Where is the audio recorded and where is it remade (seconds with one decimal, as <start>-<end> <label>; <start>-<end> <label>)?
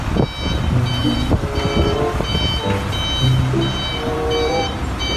0.0-1.0 recorded; 1.0-2.4 remade; 2.4-3.9 recorded; 3.9-5.2 remade